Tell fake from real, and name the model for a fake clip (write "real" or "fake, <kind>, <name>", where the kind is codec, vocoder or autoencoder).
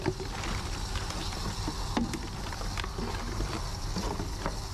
real